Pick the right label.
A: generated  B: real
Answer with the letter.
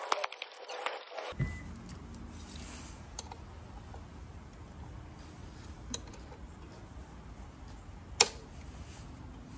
B